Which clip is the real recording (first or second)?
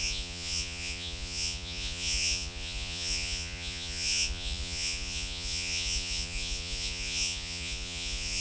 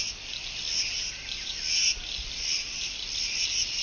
second